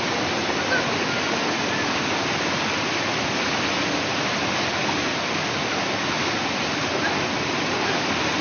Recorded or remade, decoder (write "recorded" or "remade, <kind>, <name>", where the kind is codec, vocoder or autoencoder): recorded